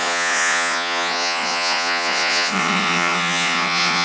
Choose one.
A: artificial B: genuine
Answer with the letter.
A